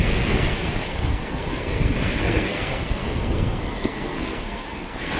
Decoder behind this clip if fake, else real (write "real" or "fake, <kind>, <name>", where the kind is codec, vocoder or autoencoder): fake, codec, SNAC